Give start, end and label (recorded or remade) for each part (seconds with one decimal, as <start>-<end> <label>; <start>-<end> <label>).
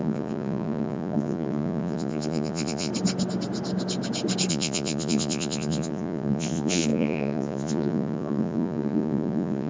0.0-2.9 remade; 2.9-4.5 recorded; 4.5-9.7 remade